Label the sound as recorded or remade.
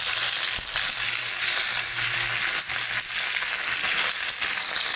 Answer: recorded